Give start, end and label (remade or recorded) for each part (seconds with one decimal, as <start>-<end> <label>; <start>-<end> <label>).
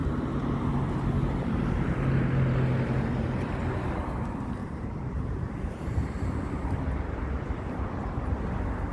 0.0-4.6 recorded; 4.6-6.5 remade; 6.5-8.9 recorded